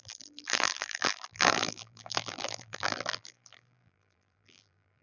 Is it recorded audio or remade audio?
remade